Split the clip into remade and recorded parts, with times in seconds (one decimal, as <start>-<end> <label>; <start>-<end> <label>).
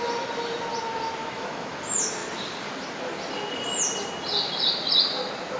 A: 0.0-1.2 recorded; 1.2-1.8 remade; 1.8-5.6 recorded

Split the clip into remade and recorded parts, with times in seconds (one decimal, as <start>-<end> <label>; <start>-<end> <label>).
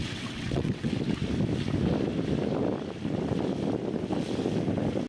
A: 0.0-0.9 remade; 0.9-5.1 recorded